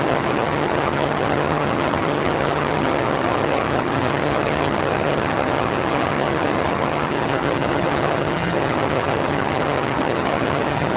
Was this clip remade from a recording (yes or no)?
yes